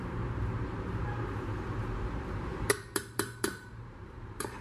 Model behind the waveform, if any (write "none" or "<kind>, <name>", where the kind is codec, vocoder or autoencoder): vocoder, BigVGAN v2